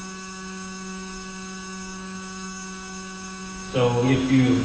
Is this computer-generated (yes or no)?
yes